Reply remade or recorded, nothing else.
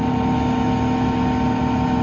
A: recorded